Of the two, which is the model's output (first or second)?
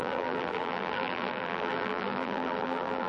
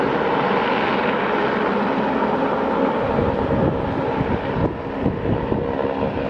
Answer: first